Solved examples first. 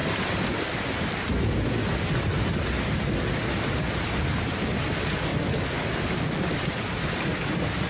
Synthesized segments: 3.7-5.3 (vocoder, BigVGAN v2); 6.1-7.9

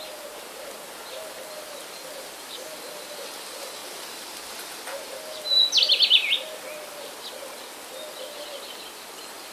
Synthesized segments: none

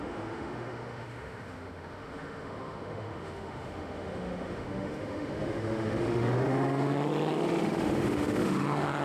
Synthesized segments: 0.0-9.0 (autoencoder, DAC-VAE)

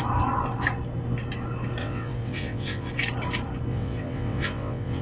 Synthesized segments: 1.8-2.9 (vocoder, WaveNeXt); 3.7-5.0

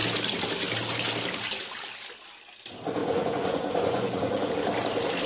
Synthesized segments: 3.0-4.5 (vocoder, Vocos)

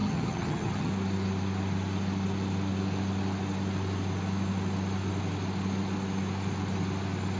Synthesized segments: 0.0-0.9 (vocoder, HiFi-GAN)

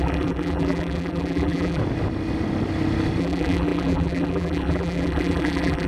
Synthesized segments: 0.0-1.8 (vocoder, BigVGAN v2); 3.2-5.9

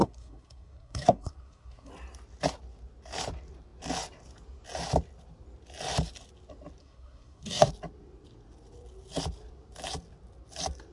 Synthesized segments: 0.0-1.9 (codec, SNAC); 6.8-7.7